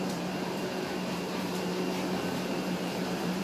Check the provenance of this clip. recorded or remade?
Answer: remade